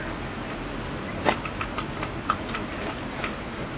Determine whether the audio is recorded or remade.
recorded